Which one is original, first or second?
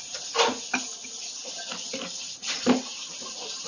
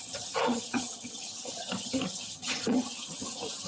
first